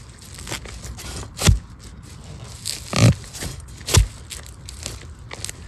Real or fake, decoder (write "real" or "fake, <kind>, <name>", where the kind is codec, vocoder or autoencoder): real